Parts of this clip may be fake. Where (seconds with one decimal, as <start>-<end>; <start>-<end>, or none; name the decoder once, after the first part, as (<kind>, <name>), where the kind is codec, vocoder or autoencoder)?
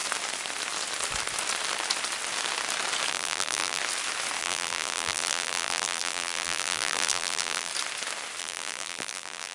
3.1-3.8 (vocoder, BigVGAN v2); 4.4-7.7; 8.4-9.5